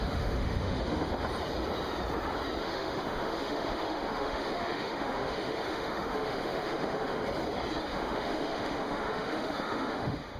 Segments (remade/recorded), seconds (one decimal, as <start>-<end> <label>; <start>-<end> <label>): 0.0-1.1 remade; 1.1-2.6 recorded; 2.6-7.2 remade; 7.2-7.8 recorded; 7.8-10.4 remade